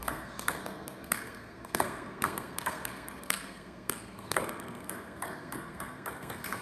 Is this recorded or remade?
remade